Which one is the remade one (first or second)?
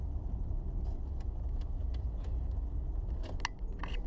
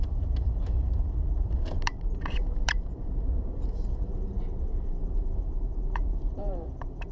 second